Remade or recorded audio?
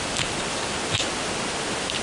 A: recorded